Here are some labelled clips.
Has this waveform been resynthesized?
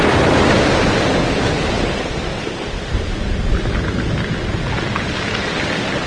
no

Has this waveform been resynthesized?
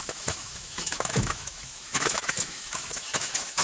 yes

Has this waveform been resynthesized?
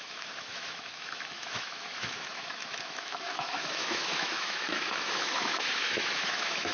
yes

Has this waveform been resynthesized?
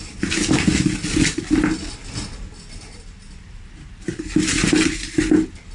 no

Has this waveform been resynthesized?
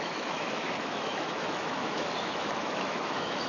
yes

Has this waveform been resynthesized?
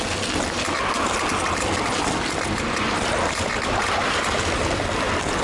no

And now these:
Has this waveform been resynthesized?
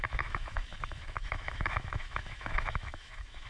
yes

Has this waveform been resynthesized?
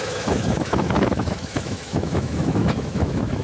yes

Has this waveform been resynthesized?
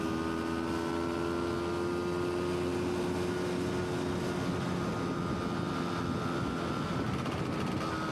no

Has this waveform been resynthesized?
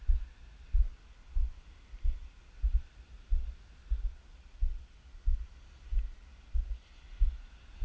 no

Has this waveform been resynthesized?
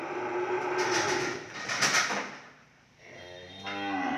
no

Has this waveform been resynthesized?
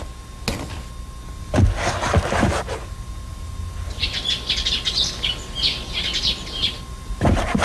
no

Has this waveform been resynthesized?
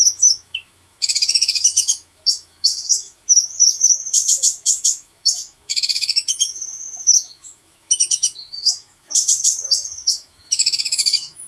yes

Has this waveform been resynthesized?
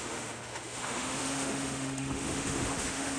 yes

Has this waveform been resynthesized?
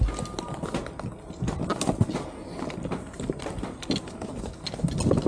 no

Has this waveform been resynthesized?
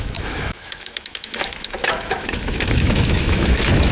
yes